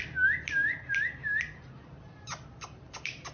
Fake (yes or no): no